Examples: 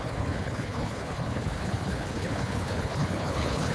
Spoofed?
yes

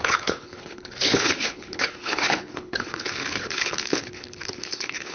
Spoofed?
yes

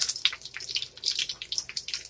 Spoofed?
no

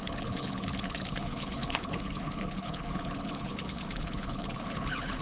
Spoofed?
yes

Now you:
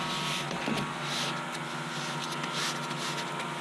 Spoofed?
no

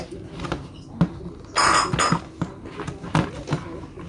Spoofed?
no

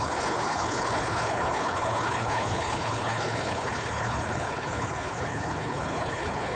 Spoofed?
yes